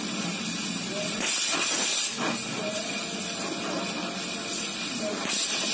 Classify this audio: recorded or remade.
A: recorded